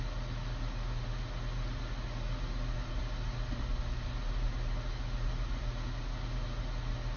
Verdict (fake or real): real